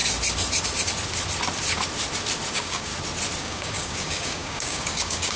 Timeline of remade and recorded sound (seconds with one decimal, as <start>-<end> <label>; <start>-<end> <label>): 0.0-2.5 recorded; 2.5-2.9 remade; 2.9-3.4 recorded; 3.4-5.4 remade